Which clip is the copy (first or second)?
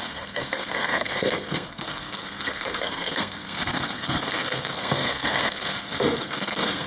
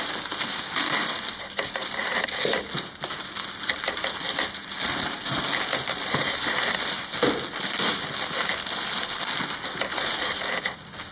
first